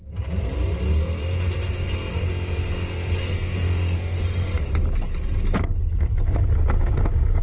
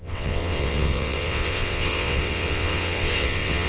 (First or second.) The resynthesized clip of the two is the second